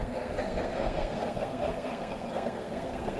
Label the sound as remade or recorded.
remade